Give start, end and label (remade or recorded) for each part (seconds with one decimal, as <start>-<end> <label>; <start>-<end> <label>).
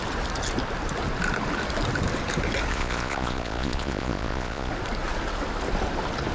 0.0-2.7 recorded; 2.7-4.7 remade; 4.7-6.3 recorded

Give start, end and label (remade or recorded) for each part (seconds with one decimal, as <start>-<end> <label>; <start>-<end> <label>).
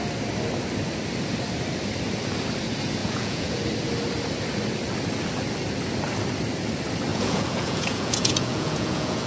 0.0-3.0 recorded; 3.0-3.6 remade; 3.6-7.1 recorded; 7.1-9.3 remade